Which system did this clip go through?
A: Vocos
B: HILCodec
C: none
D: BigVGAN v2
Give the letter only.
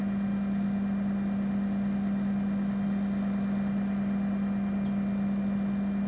C